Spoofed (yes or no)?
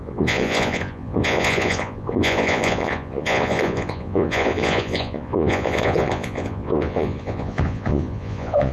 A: yes